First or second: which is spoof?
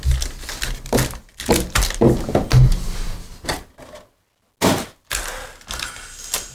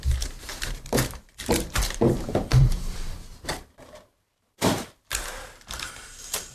second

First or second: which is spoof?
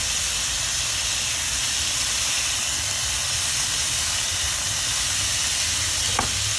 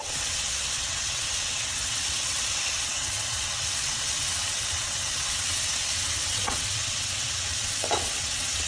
second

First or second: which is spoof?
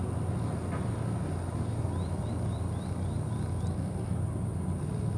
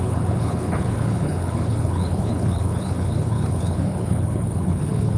second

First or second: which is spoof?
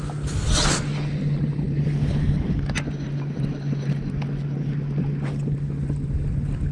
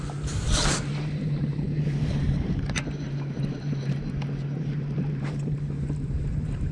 second